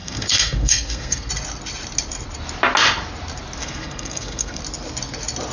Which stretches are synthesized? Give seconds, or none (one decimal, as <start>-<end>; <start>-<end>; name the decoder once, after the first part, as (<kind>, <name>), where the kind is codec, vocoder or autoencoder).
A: 0.0-1.3 (codec, SNAC); 3.6-4.6